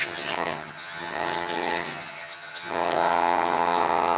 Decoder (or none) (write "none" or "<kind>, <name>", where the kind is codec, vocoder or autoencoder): vocoder, HiFi-GAN